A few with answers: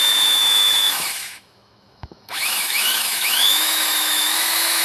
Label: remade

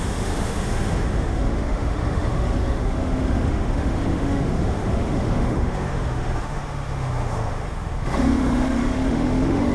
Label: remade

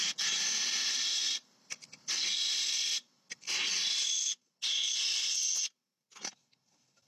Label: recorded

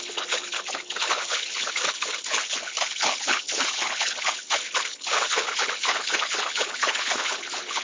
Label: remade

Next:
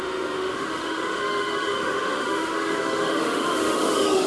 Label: remade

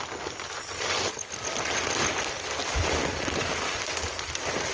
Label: recorded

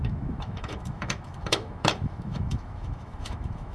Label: remade